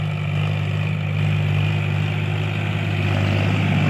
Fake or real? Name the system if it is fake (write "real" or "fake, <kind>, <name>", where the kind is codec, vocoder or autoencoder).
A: real